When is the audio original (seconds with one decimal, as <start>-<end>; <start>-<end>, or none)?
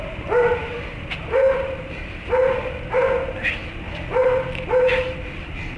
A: 0.0-5.8